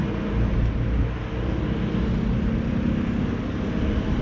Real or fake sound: real